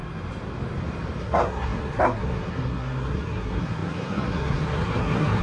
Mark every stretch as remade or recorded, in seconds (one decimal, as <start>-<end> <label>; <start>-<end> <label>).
0.0-1.2 recorded; 1.2-5.4 remade